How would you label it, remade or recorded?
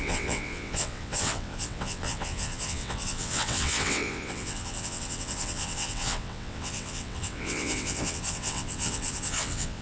remade